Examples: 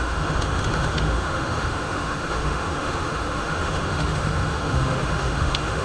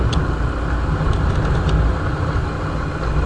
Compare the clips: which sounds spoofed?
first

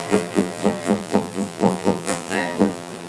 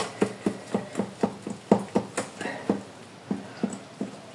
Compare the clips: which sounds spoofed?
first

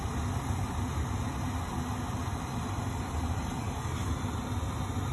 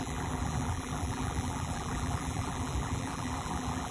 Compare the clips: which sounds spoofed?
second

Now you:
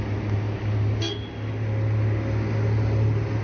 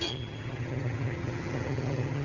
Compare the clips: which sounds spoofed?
second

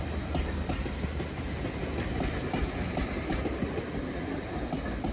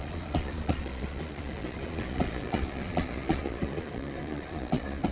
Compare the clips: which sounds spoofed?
second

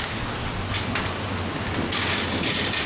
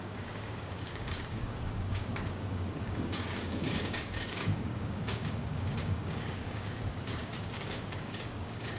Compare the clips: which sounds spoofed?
second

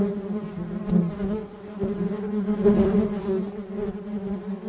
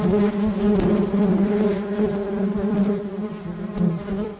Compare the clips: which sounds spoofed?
second